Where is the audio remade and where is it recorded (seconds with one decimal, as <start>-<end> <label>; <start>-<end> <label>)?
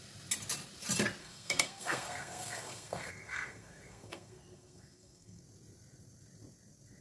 0.0-1.2 recorded; 1.2-5.4 remade; 5.4-7.0 recorded